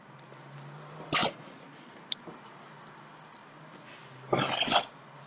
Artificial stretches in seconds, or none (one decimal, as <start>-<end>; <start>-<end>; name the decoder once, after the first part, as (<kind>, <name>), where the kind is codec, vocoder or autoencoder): 1.2-2.0 (vocoder, Vocos)